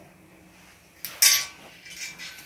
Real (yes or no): yes